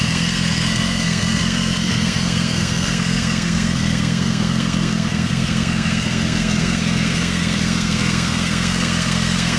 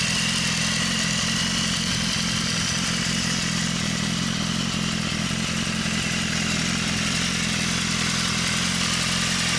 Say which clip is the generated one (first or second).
first